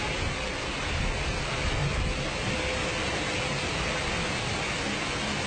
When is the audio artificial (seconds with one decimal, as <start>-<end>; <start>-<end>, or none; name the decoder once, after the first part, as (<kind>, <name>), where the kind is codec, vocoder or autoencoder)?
none

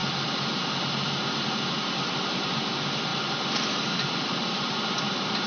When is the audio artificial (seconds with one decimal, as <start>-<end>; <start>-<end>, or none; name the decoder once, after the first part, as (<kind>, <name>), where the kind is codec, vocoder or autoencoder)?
none

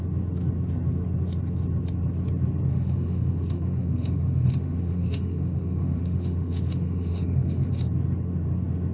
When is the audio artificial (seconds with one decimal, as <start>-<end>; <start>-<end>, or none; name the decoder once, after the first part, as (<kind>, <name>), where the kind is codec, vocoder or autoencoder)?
2.7-7.7 (autoencoder, DAC-VAE)

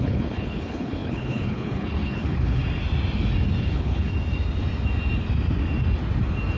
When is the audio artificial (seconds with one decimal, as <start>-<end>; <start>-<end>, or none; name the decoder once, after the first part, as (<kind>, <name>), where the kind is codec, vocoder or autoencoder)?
0.0-2.6 (codec, HILCodec); 3.6-4.1

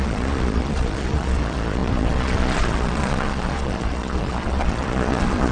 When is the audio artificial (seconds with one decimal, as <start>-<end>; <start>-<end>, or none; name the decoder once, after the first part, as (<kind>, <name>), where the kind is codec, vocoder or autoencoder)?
0.0-5.5 (vocoder, Vocos)

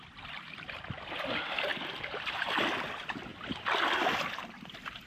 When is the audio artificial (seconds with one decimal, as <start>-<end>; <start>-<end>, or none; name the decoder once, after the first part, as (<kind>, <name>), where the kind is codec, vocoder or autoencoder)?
none

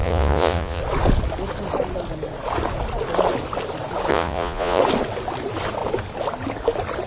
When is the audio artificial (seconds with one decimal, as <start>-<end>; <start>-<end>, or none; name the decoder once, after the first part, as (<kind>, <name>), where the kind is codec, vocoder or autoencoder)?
0.0-0.8 (vocoder, Vocos); 4.1-4.8

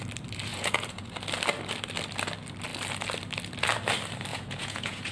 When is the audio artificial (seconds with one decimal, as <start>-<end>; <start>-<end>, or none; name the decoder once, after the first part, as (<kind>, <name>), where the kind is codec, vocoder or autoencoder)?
0.5-1.1 (vocoder, Vocos); 4.3-5.1